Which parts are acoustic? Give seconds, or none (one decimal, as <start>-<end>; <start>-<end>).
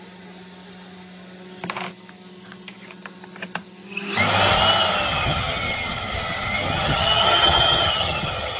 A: 0.0-5.1